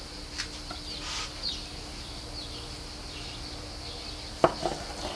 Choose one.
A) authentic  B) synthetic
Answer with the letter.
A